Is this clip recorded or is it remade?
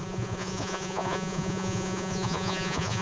remade